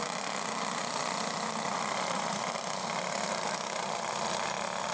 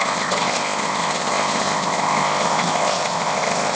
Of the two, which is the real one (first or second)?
first